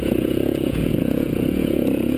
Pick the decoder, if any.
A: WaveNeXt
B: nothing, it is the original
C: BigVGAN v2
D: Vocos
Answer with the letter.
D